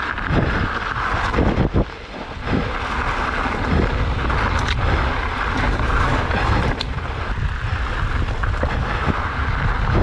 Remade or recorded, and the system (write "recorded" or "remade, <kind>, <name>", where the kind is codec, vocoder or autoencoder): recorded